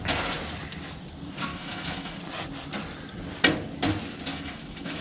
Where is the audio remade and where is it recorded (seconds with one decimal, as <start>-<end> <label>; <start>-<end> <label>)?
0.0-1.5 recorded; 1.5-2.2 remade; 2.2-4.3 recorded; 4.3-5.0 remade